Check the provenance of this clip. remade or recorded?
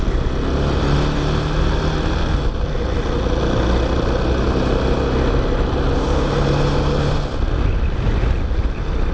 recorded